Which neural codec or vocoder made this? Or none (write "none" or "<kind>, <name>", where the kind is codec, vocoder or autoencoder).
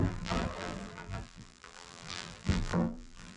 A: vocoder, BigVGAN v2